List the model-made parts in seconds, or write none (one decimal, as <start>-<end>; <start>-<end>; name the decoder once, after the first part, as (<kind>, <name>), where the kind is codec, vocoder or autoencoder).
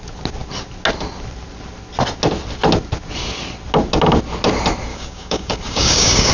4.9-6.3 (codec, DAC)